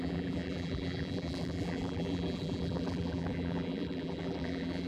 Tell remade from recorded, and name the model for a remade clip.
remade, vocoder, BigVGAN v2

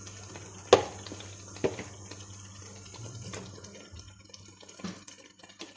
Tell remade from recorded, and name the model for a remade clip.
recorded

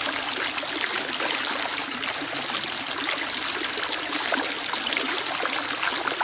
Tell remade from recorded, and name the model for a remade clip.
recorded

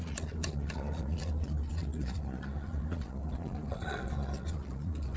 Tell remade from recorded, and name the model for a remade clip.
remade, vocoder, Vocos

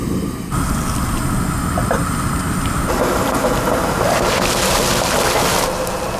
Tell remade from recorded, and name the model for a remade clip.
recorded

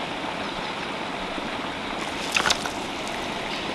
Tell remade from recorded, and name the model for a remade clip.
recorded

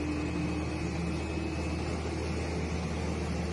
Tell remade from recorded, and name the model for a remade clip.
recorded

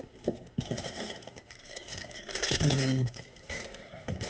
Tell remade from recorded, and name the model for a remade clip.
remade, codec, SNAC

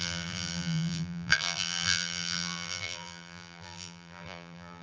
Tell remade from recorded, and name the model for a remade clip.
remade, vocoder, BigVGAN v2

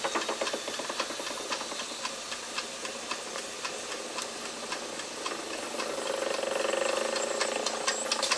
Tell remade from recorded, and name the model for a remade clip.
recorded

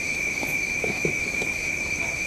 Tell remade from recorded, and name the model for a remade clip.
remade, autoencoder, DAC-VAE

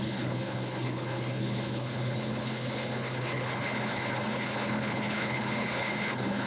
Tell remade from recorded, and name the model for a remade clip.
remade, codec, HILCodec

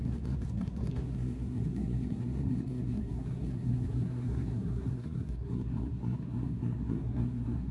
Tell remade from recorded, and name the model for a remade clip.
remade, codec, SNAC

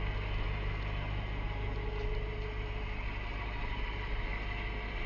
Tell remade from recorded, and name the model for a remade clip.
recorded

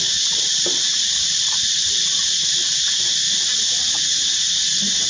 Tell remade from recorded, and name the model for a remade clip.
recorded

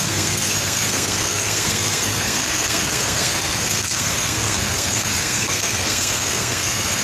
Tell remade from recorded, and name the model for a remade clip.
remade, codec, SNAC